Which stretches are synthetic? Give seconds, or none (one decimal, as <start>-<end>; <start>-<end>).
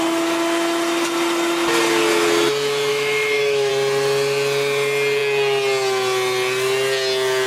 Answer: 2.9-3.7